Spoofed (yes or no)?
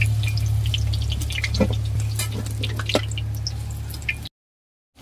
no